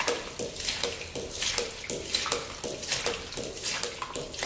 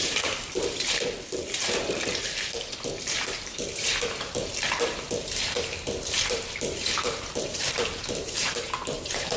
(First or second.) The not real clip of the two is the second